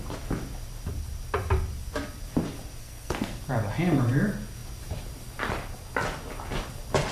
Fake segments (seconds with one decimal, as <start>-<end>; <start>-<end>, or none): 2.8-3.4